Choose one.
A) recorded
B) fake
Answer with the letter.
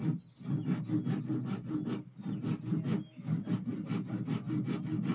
A